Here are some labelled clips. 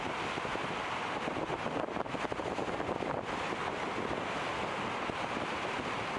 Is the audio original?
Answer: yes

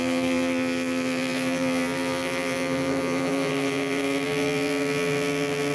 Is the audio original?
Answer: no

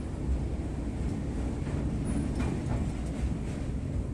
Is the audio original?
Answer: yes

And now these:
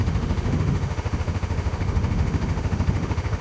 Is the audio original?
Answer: no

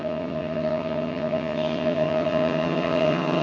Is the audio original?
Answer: no